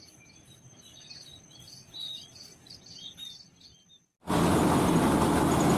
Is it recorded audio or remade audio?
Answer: recorded